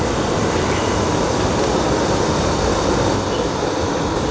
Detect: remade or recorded recorded